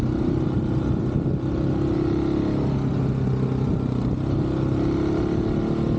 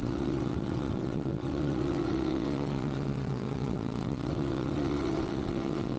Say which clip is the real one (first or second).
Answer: first